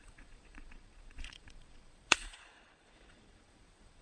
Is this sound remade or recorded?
remade